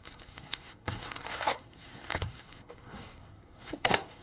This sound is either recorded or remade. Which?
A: remade